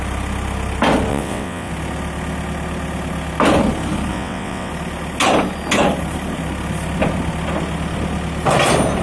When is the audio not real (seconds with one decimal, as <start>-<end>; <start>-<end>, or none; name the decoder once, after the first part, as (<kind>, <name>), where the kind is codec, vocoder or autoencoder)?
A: 1.1-1.7 (vocoder, WaveNeXt); 4.1-4.7